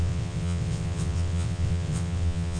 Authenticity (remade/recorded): remade